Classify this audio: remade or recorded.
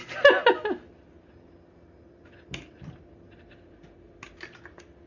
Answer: recorded